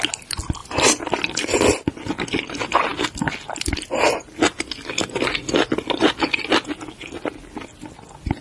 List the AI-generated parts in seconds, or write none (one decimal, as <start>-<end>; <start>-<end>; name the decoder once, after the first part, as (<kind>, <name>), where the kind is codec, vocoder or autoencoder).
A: 0.6-2.1 (vocoder, BigVGAN v2)

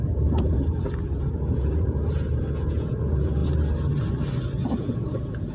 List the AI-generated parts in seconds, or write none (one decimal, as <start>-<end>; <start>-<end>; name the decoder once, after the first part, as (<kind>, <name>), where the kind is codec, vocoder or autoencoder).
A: 0.0-3.4 (vocoder, Vocos); 4.8-5.5